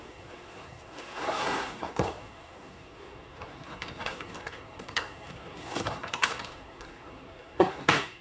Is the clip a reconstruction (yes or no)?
yes